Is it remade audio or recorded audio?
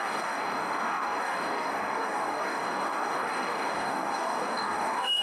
remade